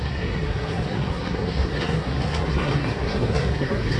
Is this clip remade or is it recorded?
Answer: remade